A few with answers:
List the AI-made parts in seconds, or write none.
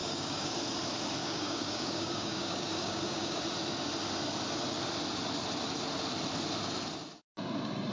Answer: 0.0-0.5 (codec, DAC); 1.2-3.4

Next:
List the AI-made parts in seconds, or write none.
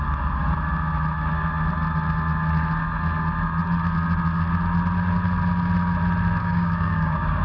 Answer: 6.4-7.4 (codec, DAC)